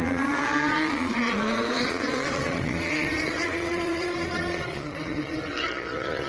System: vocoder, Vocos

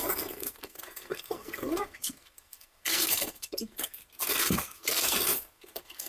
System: codec, SNAC